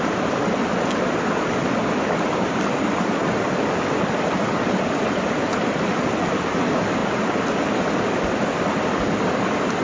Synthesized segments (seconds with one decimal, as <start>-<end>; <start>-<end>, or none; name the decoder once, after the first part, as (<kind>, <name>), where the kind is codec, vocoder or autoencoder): none